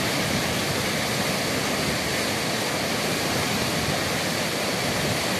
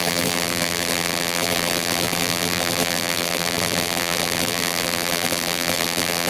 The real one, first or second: first